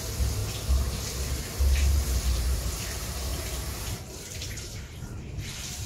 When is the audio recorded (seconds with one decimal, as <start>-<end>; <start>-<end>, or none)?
0.4-1.7